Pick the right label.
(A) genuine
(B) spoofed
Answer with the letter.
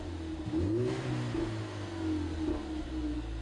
A